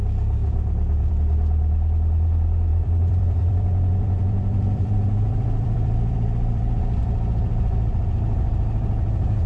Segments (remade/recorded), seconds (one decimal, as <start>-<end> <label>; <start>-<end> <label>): 0.0-0.4 recorded; 0.4-1.1 remade; 1.1-2.7 recorded; 2.7-7.0 remade; 7.0-9.5 recorded